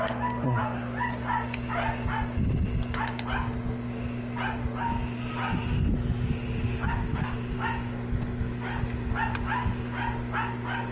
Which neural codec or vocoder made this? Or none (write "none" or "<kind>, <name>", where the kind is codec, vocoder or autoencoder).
none